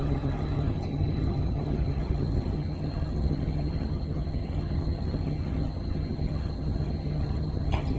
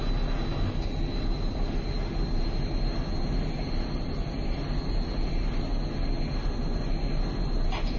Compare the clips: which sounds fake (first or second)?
first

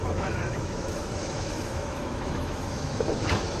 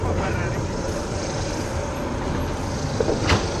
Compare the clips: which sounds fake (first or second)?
first